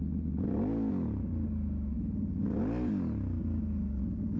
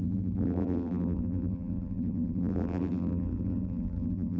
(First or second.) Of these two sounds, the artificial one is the second